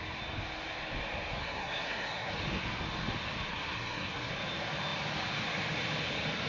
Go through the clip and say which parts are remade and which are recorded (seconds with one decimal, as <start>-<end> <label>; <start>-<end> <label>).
0.0-1.4 recorded; 1.4-2.3 remade; 2.3-3.5 recorded; 3.5-4.3 remade; 4.3-6.5 recorded